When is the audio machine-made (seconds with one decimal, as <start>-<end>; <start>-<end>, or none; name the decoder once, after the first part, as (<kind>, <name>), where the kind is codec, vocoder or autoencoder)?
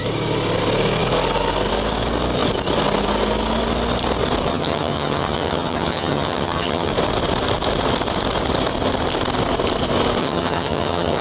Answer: 4.5-6.9 (vocoder, HiFi-GAN); 10.2-11.2